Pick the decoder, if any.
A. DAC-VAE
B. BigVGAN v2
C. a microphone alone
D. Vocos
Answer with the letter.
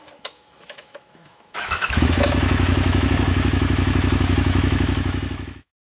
A